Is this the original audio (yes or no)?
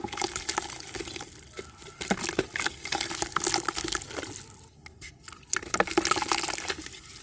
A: yes